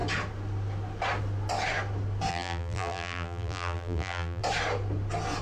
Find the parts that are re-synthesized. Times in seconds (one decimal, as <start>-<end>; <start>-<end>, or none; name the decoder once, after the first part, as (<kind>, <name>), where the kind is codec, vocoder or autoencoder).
2.3-4.4 (vocoder, BigVGAN v2)